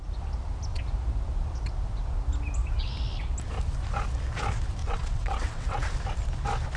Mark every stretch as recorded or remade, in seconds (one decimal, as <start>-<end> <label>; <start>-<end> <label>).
0.0-4.8 recorded; 4.8-5.9 remade; 5.9-6.8 recorded